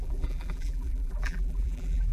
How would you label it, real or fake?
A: fake